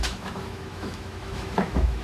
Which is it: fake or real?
fake